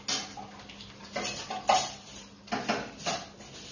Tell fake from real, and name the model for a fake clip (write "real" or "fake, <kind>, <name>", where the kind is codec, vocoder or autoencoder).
real